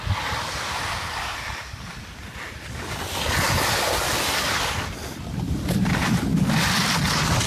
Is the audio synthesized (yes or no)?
no